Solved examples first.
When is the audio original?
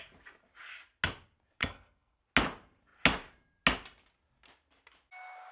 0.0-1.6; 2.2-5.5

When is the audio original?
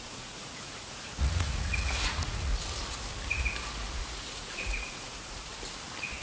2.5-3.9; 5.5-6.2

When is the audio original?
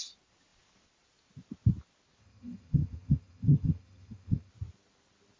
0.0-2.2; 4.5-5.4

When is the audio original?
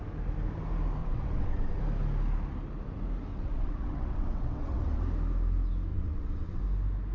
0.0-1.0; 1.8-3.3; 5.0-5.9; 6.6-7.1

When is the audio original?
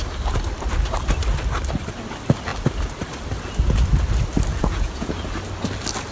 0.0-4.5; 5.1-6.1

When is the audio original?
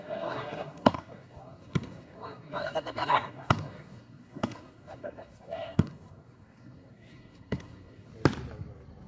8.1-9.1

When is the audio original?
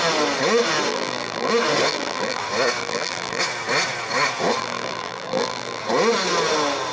0.0-0.9; 1.5-1.9; 2.4-2.8; 3.4-4.6; 5.8-6.9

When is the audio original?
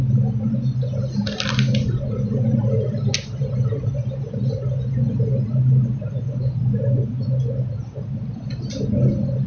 0.0-9.5